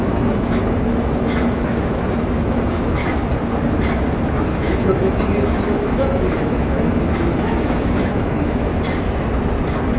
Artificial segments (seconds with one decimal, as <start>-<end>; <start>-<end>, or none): 0.0-3.0; 4.3-8.7